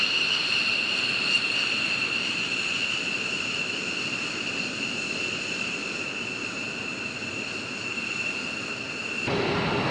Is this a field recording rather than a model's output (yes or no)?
yes